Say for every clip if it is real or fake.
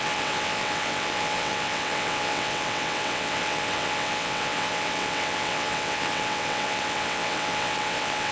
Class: fake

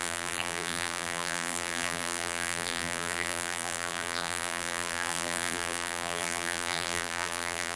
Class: fake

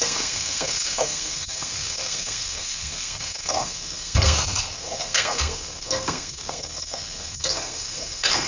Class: fake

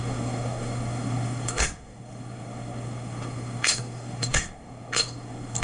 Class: fake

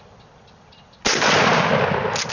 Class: real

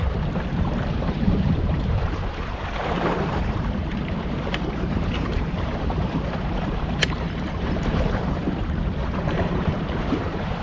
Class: fake